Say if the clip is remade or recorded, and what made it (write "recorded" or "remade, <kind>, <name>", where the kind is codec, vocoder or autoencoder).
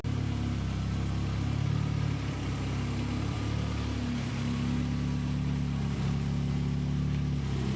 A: recorded